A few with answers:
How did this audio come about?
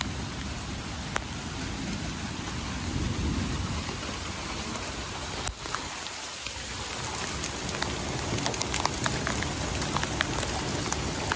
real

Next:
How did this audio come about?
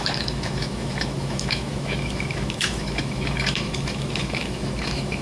fake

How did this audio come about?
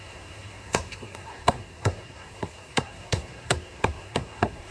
fake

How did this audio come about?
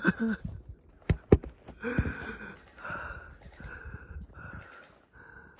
real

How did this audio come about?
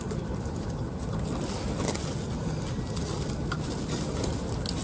real